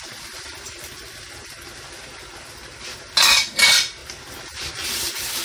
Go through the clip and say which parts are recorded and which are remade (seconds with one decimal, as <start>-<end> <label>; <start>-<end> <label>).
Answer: 0.0-5.4 recorded